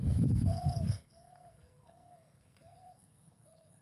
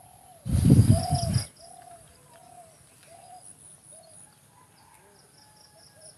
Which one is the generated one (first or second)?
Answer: first